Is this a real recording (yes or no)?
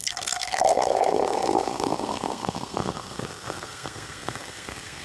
no